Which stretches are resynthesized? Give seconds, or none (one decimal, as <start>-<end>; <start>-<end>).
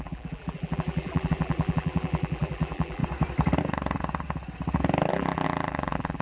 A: 0.0-3.0; 5.1-6.2